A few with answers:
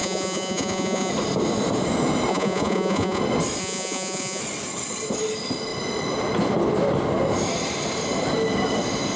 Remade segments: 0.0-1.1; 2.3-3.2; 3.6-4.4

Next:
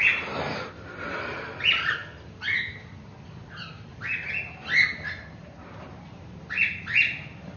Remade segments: none